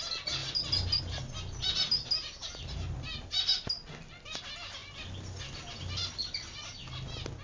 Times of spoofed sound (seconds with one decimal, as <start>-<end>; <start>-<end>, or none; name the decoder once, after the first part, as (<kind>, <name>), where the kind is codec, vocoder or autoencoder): none